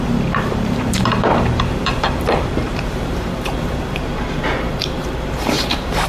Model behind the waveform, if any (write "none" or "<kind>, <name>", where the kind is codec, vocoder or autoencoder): vocoder, BigVGAN v2